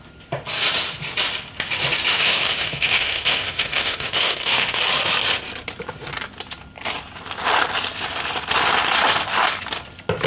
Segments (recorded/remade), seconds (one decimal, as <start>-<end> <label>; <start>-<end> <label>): 0.0-2.1 recorded; 2.1-4.8 remade; 4.8-10.3 recorded